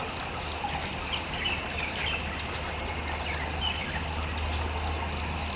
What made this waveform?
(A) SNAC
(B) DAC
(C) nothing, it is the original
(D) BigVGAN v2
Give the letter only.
C